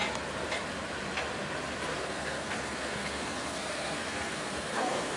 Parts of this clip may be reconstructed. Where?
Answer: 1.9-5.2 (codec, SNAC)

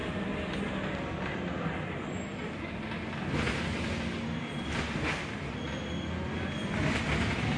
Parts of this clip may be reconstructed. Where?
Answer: 0.0-1.0 (vocoder, BigVGAN v2)

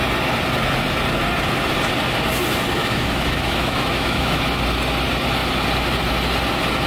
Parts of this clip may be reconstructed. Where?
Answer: 2.8-4.4 (autoencoder, DAC-VAE)